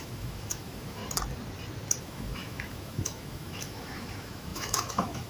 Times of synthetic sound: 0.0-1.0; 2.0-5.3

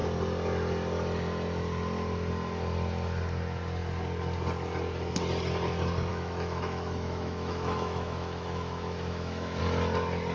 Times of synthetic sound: 6.1-9.6